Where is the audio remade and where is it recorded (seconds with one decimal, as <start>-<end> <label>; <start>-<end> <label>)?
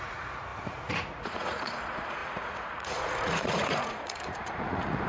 0.0-5.1 remade